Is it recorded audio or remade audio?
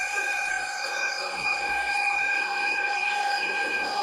remade